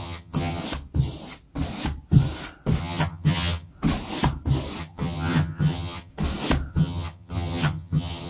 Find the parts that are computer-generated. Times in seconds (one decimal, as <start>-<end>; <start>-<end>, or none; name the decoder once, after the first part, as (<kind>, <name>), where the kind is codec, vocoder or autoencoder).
0.0-0.6 (vocoder, HiFi-GAN); 2.8-3.7; 4.8-6.1; 6.7-8.3